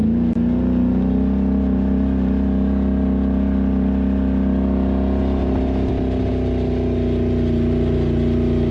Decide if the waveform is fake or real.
real